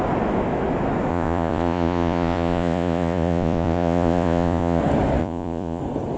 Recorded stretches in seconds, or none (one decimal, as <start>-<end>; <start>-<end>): 0.0-1.1; 4.8-5.2; 5.8-6.2